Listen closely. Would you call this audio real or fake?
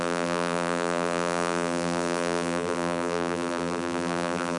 fake